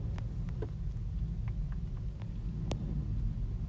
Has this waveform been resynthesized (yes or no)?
no